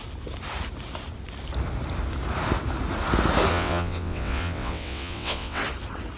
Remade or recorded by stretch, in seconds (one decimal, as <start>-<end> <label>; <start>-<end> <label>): 0.0-3.5 recorded; 3.5-5.6 remade; 5.6-6.2 recorded